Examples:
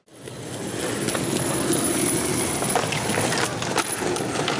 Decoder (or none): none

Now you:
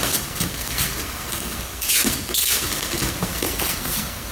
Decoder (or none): codec, SNAC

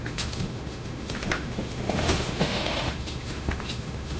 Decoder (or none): autoencoder, DAC-VAE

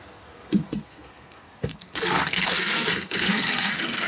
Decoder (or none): codec, SNAC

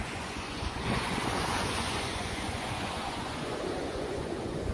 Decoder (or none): vocoder, Vocos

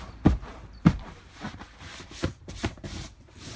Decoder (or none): vocoder, BigVGAN v2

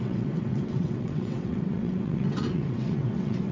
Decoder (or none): vocoder, WaveNeXt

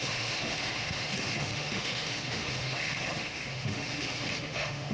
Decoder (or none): autoencoder, DAC-VAE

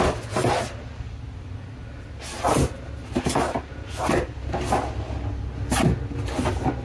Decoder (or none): none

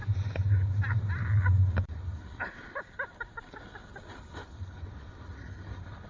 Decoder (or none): none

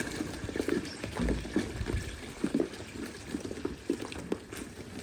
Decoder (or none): none